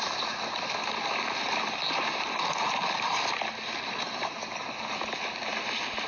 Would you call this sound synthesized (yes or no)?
no